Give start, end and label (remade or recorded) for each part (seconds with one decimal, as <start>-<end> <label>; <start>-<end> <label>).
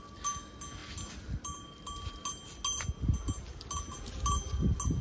0.0-5.0 recorded